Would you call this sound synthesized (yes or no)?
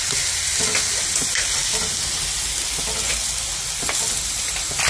no